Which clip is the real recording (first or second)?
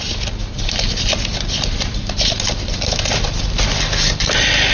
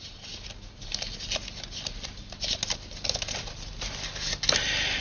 second